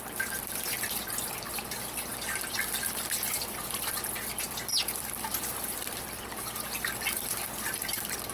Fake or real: fake